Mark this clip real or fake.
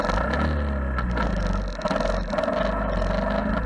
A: real